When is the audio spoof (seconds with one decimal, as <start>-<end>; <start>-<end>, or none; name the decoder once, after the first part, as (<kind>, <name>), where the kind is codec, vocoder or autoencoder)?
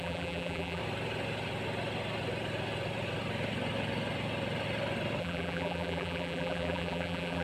0.0-0.8 (vocoder, BigVGAN v2); 5.2-7.4